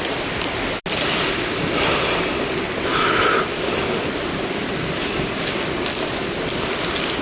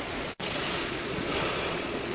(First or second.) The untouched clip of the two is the first